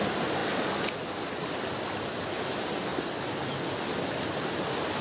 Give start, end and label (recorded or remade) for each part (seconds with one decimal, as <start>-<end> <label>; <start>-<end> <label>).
0.0-5.0 recorded